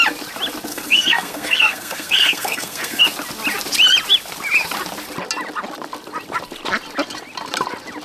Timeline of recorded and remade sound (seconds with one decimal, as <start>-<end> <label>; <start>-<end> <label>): 0.0-0.7 recorded; 0.7-3.0 remade; 3.0-8.0 recorded